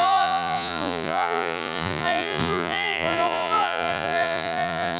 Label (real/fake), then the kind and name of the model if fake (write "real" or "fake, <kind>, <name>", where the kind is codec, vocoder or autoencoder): fake, vocoder, Vocos